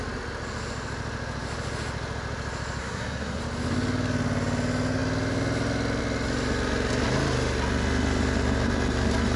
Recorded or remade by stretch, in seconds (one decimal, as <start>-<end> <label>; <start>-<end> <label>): 0.0-2.8 recorded; 2.8-3.4 remade; 3.4-9.4 recorded